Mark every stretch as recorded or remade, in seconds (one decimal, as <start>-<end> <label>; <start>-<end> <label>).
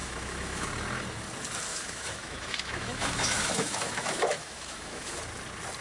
0.0-0.7 remade; 0.7-1.7 recorded; 1.7-5.2 remade; 5.2-5.8 recorded